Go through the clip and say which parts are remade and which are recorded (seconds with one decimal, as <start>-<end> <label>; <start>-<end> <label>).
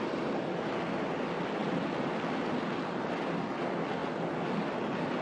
0.0-1.6 recorded; 1.6-3.6 remade; 3.6-5.2 recorded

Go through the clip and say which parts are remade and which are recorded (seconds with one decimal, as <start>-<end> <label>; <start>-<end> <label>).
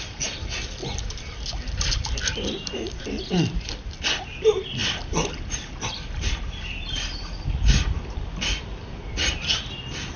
0.0-4.8 recorded; 4.8-8.8 remade; 8.8-10.2 recorded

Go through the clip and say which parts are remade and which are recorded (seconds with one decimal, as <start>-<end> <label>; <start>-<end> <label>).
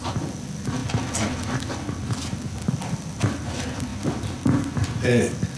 0.0-5.6 recorded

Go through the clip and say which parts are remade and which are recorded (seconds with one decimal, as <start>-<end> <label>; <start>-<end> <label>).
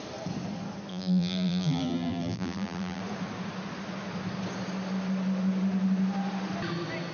0.0-0.9 recorded; 0.9-3.0 remade; 3.0-7.1 recorded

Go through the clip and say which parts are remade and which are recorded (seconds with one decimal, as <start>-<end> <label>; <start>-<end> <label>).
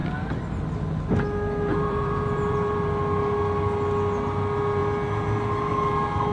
0.0-1.7 recorded; 1.7-2.9 remade; 2.9-6.3 recorded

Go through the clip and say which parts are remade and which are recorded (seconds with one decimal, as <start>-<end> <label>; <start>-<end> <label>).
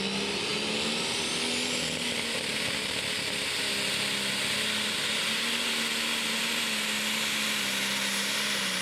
0.0-8.8 recorded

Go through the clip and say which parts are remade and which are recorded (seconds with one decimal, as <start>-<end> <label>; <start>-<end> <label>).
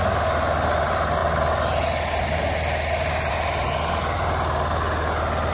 0.0-5.5 recorded